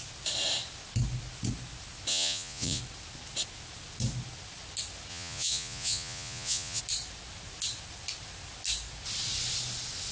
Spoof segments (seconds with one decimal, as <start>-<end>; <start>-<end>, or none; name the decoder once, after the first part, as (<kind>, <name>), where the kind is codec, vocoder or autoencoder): 2.1-2.8 (vocoder, Vocos); 5.1-6.8